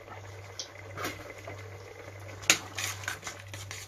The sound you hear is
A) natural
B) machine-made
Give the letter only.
A